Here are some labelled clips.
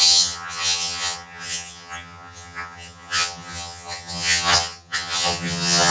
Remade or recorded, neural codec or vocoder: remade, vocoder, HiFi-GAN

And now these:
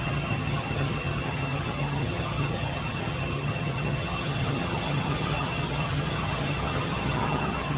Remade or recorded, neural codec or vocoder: remade, vocoder, HiFi-GAN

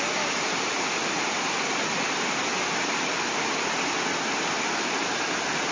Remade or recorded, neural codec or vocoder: recorded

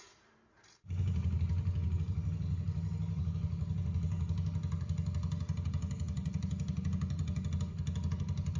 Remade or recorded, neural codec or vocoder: recorded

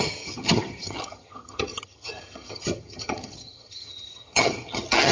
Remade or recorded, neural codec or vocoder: remade, vocoder, HiFi-GAN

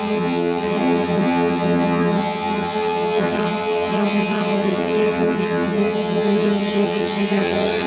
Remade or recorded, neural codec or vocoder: remade, vocoder, HiFi-GAN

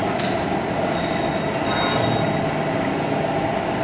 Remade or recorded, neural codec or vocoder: recorded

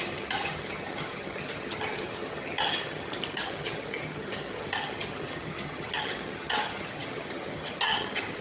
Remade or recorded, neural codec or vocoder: remade, vocoder, HiFi-GAN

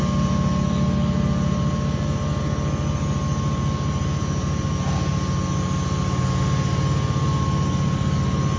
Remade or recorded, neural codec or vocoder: recorded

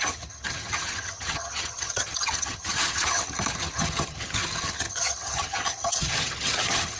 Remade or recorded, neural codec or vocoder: remade, vocoder, HiFi-GAN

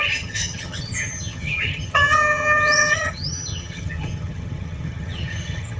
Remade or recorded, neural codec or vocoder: remade, vocoder, HiFi-GAN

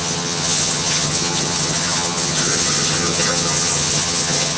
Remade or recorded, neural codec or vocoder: remade, vocoder, HiFi-GAN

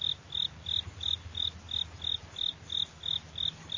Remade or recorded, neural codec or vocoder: recorded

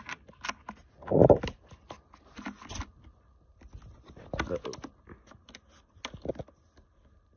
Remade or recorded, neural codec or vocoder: recorded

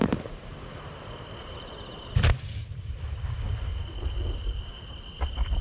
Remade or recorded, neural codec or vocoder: recorded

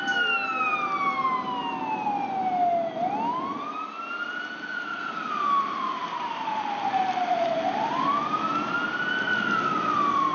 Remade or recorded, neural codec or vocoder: recorded